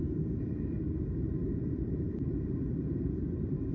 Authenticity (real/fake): fake